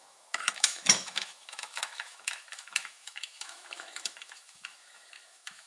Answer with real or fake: fake